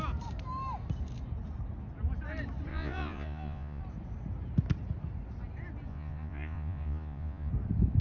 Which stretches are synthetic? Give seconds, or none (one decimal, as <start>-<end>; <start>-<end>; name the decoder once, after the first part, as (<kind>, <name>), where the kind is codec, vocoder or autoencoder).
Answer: 2.7-3.8 (vocoder, Vocos); 5.9-7.5